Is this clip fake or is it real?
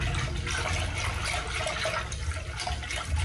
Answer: real